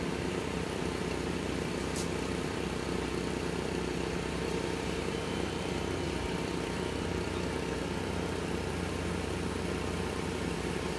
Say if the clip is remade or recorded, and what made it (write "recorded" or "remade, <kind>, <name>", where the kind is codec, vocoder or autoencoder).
remade, vocoder, BigVGAN v2